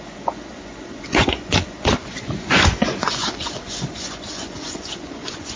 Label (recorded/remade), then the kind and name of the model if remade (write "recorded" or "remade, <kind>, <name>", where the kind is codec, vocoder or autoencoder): remade, vocoder, Vocos